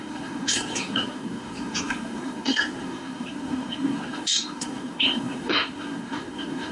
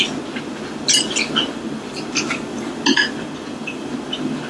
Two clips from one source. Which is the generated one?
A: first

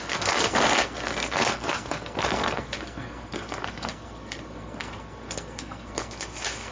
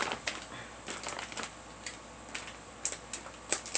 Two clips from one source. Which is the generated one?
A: first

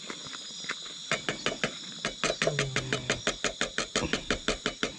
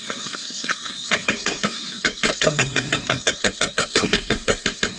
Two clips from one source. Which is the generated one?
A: second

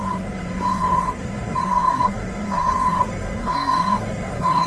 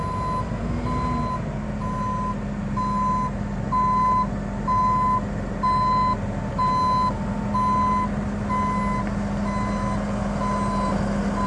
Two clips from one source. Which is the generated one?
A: first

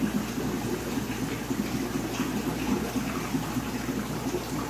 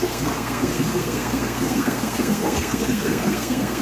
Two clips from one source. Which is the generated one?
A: second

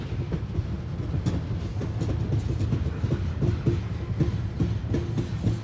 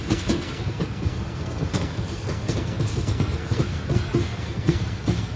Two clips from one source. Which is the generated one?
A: second